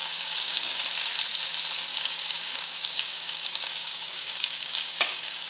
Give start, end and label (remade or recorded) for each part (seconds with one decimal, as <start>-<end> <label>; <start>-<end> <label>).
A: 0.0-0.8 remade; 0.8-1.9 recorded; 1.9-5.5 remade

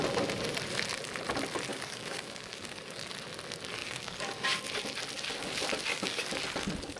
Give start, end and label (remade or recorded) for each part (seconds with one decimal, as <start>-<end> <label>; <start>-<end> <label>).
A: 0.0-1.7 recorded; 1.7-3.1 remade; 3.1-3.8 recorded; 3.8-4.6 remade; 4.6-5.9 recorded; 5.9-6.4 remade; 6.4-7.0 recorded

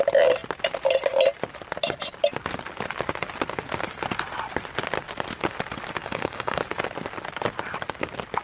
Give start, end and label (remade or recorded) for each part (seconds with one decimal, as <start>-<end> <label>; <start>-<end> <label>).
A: 0.0-6.0 recorded; 6.0-6.6 remade; 6.6-8.4 recorded